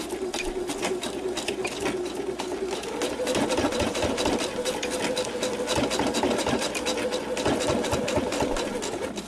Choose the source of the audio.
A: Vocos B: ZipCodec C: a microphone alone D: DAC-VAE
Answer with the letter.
C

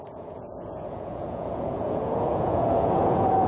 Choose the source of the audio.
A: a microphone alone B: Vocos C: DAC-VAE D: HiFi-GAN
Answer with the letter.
B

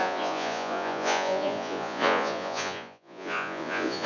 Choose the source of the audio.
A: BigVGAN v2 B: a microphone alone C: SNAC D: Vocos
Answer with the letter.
D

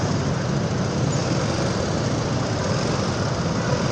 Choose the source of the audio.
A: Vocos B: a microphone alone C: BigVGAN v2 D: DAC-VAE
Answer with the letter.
B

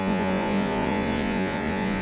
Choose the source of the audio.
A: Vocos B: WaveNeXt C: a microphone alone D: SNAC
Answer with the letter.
A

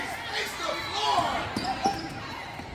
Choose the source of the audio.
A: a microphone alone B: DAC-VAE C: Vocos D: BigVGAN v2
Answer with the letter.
A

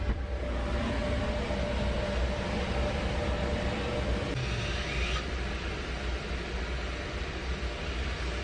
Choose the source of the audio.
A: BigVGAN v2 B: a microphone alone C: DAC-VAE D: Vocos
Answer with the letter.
B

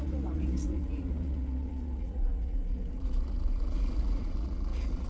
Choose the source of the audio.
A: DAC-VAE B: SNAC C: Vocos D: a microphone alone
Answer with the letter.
C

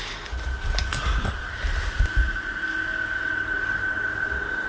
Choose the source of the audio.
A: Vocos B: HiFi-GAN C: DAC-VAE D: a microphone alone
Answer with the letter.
D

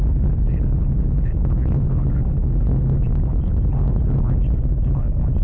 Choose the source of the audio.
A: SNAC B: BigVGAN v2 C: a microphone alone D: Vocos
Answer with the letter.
C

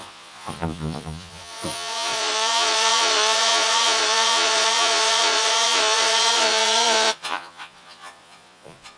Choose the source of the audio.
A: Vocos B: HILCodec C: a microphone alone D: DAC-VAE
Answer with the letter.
A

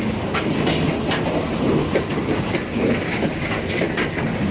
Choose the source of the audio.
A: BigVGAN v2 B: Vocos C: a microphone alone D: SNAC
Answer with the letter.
C